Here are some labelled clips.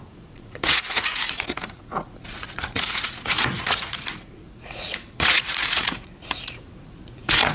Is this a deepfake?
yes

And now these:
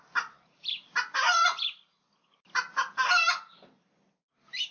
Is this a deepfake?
no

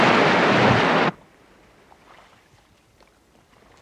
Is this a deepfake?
no